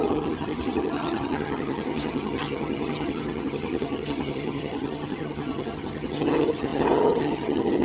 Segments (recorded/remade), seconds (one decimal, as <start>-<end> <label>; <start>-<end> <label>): 0.0-7.8 remade